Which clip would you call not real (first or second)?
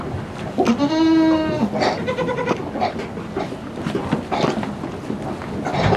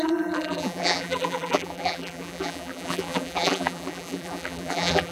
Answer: second